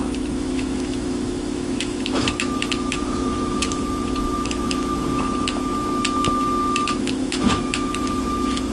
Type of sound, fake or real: fake